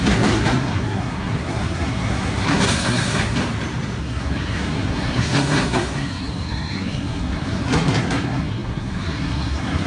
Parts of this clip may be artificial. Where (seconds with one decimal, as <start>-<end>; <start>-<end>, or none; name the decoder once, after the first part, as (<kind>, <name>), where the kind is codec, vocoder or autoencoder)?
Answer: 0.0-3.4 (codec, SNAC); 4.0-9.9